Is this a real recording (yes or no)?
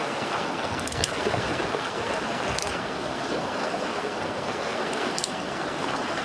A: no